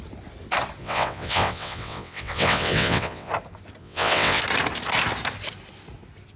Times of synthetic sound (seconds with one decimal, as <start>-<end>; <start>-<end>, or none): 0.8-3.3; 3.8-4.4